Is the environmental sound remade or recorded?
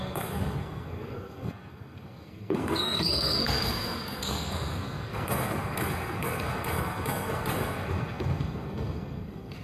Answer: remade